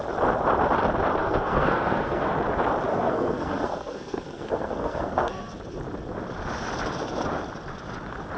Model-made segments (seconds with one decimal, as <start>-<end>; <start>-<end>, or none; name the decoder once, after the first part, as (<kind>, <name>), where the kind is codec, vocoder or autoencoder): 1.2-2.3 (codec, SNAC); 2.9-5.5